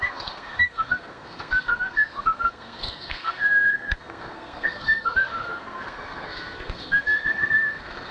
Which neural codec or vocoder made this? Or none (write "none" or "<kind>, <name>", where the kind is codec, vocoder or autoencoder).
codec, SNAC